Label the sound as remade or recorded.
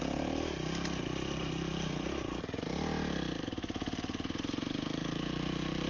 recorded